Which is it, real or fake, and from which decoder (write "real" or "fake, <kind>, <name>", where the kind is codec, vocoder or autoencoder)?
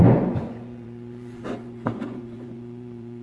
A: fake, vocoder, Vocos